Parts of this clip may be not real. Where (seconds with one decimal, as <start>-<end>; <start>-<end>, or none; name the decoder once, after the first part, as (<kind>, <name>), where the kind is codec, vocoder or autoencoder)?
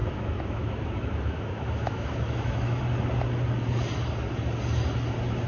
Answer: 0.0-2.8 (autoencoder, DAC-VAE)